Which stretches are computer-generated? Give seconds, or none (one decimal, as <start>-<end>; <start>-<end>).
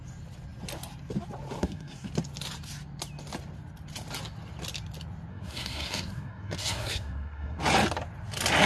1.6-2.1; 5.3-7.6